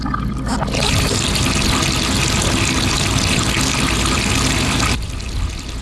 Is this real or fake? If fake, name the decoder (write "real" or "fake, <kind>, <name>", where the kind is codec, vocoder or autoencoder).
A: real